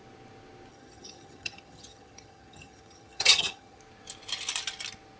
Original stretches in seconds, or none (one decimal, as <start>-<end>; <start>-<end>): 0.0-0.7; 3.8-5.2